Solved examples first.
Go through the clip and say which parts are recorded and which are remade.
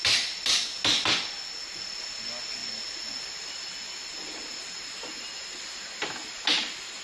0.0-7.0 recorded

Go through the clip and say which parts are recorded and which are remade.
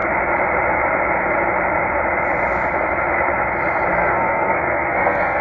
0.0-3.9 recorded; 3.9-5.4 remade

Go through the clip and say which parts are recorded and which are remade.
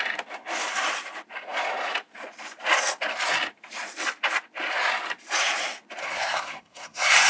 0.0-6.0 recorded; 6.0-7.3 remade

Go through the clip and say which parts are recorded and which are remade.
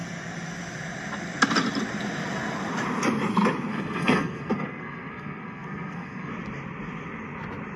0.0-3.7 recorded; 3.7-6.3 remade; 6.3-7.8 recorded